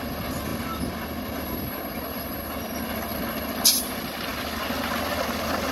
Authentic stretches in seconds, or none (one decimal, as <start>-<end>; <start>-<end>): 0.0-5.7